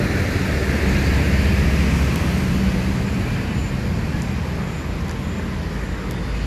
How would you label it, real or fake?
real